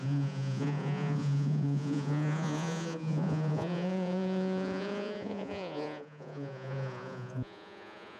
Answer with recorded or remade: remade